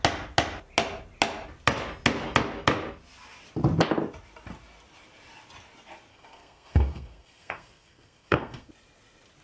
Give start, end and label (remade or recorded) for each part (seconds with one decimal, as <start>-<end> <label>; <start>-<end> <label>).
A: 0.0-6.1 recorded; 6.1-8.7 remade; 8.7-9.4 recorded